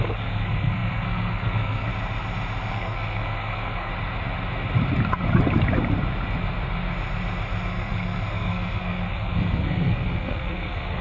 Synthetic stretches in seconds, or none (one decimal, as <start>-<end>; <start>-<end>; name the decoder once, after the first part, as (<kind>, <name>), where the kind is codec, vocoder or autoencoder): 0.0-1.9 (codec, SNAC); 2.7-3.9; 7.7-11.0